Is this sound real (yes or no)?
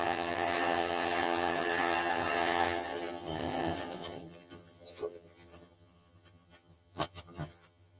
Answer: no